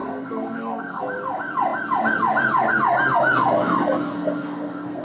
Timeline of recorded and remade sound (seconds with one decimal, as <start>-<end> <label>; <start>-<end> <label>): 0.0-1.0 remade; 1.0-4.1 recorded; 4.1-5.0 remade